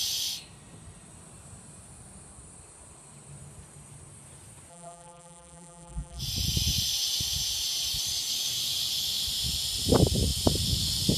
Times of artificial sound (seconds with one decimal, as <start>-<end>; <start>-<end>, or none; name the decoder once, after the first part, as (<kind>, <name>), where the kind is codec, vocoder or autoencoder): 4.7-6.2 (vocoder, BigVGAN v2)